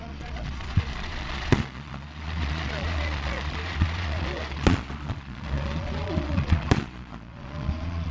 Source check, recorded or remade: remade